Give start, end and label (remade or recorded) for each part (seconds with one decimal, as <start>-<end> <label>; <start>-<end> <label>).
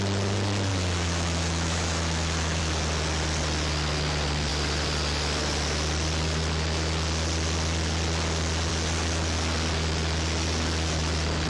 0.0-0.7 recorded; 0.7-2.6 remade; 2.6-11.5 recorded